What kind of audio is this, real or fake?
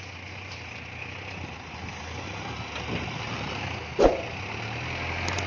real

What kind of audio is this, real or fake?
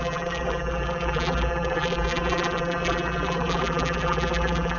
fake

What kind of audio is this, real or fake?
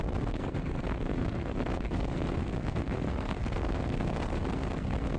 fake